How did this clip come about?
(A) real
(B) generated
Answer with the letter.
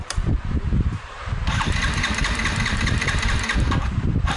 B